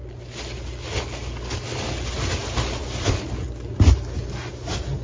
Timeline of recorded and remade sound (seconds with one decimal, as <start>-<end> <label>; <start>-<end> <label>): 0.0-5.0 recorded